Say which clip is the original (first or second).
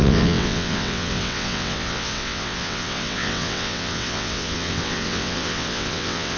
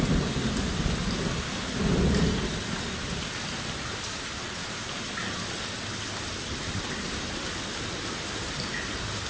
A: second